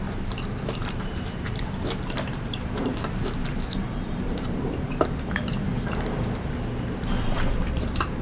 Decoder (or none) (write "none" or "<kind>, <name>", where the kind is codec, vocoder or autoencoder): vocoder, BigVGAN v2